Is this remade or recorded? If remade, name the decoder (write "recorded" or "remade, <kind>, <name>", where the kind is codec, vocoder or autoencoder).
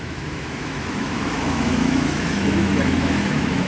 remade, autoencoder, DAC-VAE